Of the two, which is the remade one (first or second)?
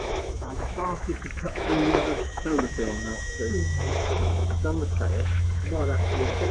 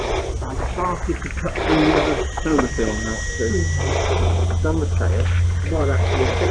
first